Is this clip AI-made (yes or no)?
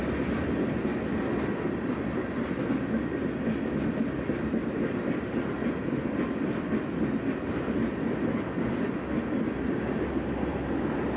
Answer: no